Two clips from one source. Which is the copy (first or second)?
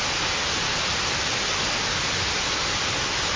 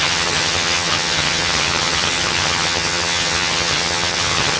second